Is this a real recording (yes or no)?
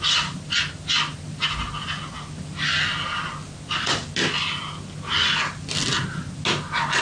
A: yes